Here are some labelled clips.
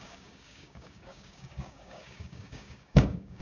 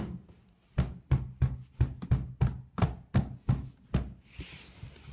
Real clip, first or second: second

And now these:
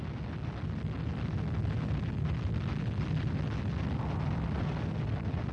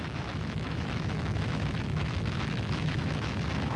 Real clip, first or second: first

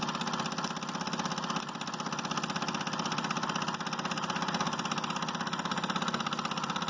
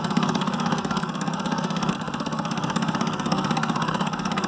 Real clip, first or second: first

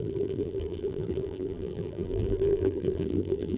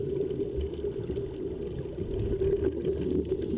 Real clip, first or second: second